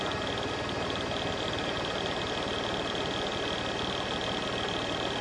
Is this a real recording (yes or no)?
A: yes